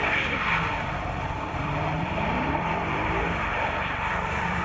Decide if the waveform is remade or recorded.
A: remade